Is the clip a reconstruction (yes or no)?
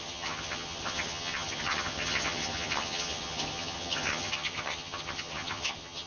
yes